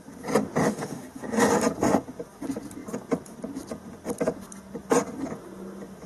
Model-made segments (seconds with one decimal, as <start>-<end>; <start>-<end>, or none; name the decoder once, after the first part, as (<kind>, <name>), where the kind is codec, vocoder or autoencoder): 0.6-1.4 (autoencoder, DAC-VAE)

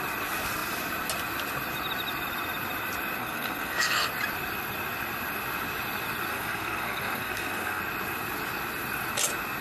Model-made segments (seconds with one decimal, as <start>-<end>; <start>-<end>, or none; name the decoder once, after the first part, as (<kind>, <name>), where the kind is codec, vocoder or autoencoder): 3.2-4.1 (codec, SNAC); 6.3-7.8

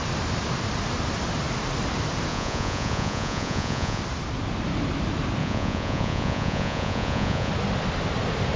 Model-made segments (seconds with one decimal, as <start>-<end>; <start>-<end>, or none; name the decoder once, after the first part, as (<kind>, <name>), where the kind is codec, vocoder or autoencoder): 2.3-4.0 (vocoder, Vocos); 5.4-7.5

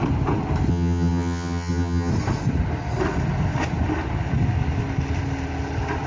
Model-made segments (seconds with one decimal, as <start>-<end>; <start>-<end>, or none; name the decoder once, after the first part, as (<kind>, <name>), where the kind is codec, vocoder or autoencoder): 0.7-2.1 (vocoder, HiFi-GAN)